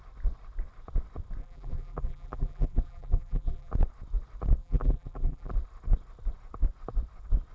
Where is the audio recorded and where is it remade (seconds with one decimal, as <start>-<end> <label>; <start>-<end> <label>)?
0.0-1.4 recorded; 1.4-3.7 remade; 3.7-4.6 recorded; 4.6-5.5 remade; 5.5-7.5 recorded